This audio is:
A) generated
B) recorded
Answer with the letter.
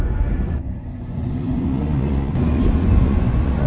A